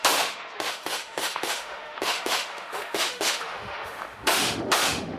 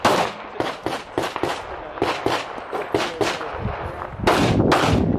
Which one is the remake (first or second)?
first